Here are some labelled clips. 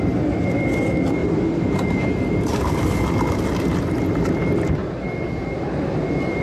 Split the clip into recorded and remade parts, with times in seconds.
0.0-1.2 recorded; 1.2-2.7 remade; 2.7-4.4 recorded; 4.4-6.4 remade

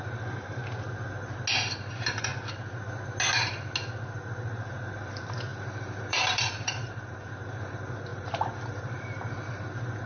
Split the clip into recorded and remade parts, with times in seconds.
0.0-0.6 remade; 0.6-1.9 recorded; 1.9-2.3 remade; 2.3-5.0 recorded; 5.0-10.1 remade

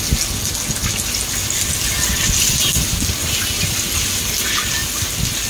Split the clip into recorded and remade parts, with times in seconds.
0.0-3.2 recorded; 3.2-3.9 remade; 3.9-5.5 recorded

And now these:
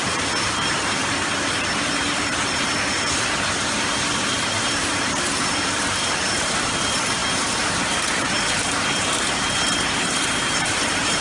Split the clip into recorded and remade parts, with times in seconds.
0.0-11.2 remade